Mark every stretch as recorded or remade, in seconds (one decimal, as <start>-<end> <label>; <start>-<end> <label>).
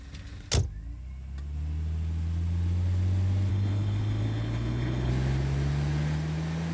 0.0-3.5 recorded; 3.5-5.1 remade; 5.1-6.7 recorded